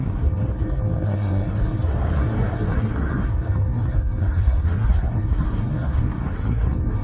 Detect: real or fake fake